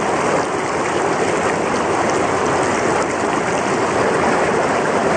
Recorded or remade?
recorded